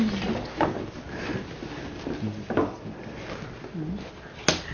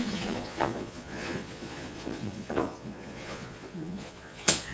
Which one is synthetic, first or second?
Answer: second